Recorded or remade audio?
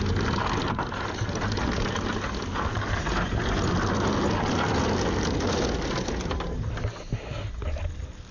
recorded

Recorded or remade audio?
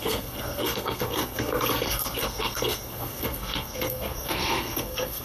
remade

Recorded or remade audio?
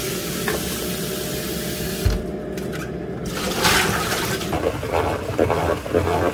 recorded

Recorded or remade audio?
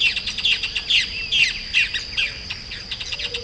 recorded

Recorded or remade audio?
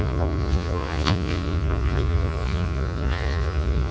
remade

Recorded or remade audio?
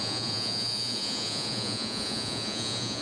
remade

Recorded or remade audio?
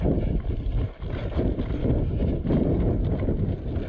recorded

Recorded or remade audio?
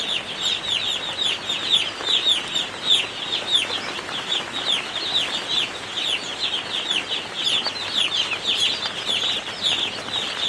recorded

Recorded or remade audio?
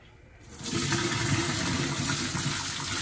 recorded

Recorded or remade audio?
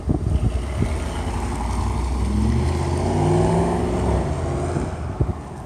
recorded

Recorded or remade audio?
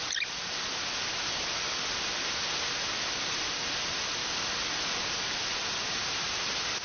recorded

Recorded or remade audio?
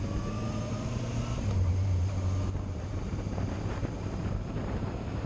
remade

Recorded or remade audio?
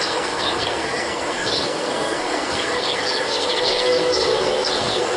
remade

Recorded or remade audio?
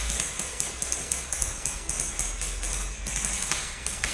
remade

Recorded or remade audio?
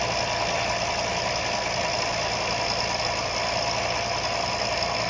recorded